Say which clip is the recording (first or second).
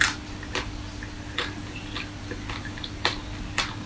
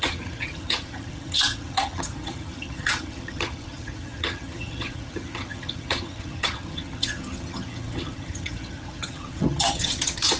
first